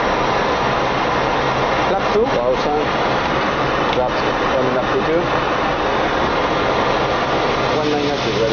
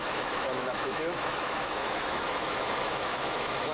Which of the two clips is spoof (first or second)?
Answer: second